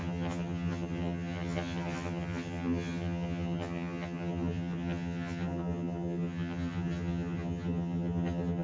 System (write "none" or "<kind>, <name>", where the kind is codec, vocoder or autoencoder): vocoder, HiFi-GAN